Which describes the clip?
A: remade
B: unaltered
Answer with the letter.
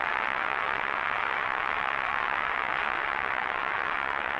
A